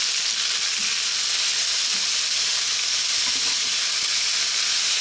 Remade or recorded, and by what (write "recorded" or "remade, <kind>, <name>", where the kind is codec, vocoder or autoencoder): recorded